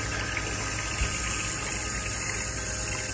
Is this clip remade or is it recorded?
recorded